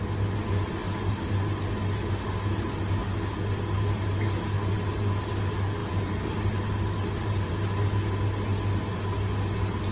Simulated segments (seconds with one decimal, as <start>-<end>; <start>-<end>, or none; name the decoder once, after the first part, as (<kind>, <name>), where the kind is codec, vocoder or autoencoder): none